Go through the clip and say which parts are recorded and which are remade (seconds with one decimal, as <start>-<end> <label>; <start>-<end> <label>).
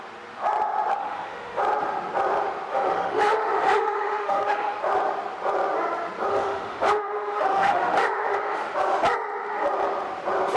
0.0-1.0 recorded; 1.0-1.6 remade; 1.6-2.7 recorded; 2.7-4.8 remade; 4.8-6.3 recorded; 6.3-8.6 remade; 8.6-10.6 recorded